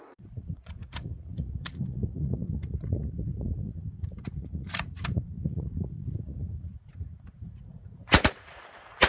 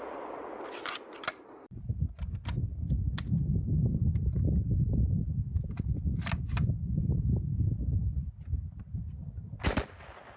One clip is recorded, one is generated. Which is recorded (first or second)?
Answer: second